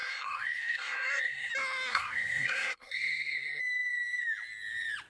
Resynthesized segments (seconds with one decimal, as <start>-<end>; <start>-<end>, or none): 0.0-1.5; 1.9-3.6